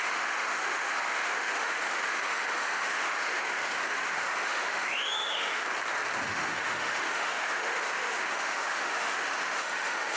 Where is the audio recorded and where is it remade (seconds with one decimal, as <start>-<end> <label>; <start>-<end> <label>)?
0.0-5.6 remade; 5.6-6.2 recorded; 6.2-10.2 remade